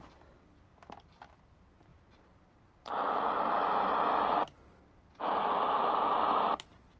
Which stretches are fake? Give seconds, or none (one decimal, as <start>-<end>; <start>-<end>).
none